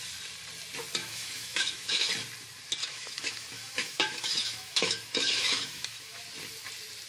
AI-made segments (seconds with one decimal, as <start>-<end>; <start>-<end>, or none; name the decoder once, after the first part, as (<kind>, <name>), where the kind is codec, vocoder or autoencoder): 1.0-2.1 (autoencoder, DAC-VAE); 2.8-6.2